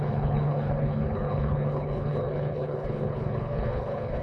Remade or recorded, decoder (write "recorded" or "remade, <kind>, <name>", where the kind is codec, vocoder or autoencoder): remade, codec, HILCodec